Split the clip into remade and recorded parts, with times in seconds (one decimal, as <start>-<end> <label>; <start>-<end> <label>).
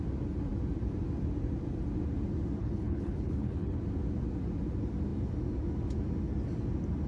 0.0-2.6 recorded; 2.6-3.8 remade; 3.8-7.1 recorded